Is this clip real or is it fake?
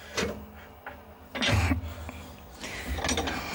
real